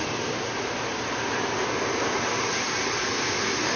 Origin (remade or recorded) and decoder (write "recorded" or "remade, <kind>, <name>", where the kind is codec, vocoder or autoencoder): recorded